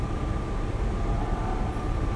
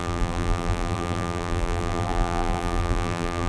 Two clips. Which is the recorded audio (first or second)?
first